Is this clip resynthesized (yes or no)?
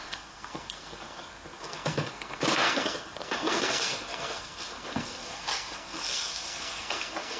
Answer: yes